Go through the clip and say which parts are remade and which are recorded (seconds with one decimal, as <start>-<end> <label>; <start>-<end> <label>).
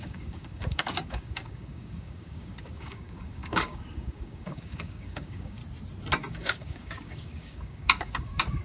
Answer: 0.0-5.6 remade; 5.6-6.3 recorded; 6.3-8.6 remade